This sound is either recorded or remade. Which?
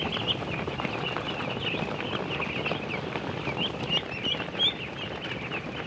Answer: recorded